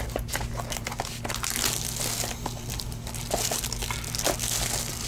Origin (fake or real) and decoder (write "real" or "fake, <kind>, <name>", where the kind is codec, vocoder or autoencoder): real